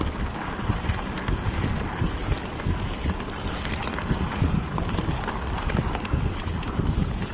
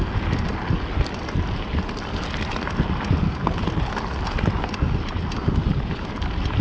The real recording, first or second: second